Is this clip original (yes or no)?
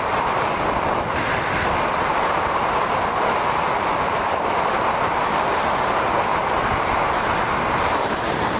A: yes